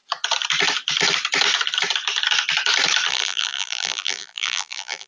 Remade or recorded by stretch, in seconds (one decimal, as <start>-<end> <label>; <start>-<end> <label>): 0.0-3.1 recorded; 3.1-5.1 remade